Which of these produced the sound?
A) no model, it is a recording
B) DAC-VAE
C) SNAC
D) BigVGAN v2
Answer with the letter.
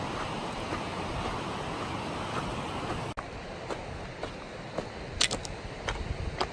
A